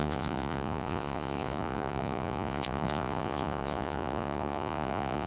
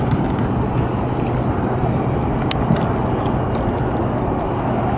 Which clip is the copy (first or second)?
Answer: first